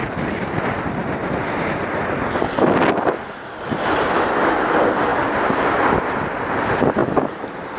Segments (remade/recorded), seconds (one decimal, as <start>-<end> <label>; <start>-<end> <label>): 0.0-1.0 recorded; 1.0-2.0 remade; 2.0-7.0 recorded; 7.0-7.8 remade